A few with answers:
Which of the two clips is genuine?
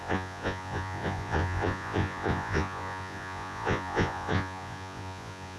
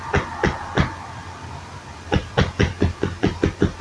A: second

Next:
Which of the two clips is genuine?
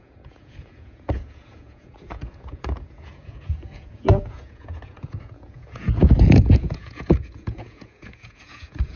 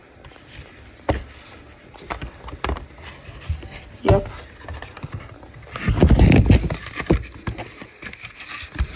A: second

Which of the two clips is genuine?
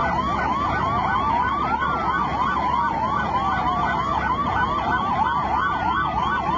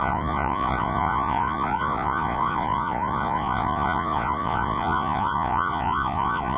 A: first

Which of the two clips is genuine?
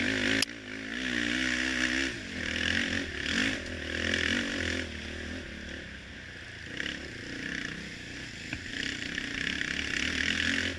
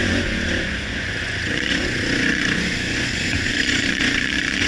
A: first